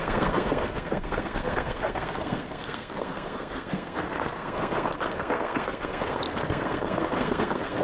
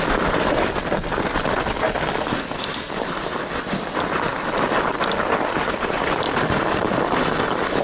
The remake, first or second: first